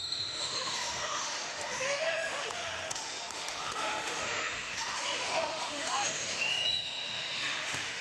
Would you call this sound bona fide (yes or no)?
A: no